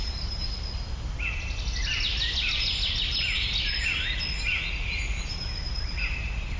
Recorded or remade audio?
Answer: recorded